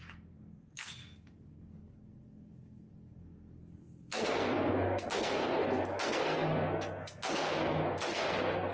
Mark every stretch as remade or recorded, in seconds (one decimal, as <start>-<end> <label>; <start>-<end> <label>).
0.0-8.7 remade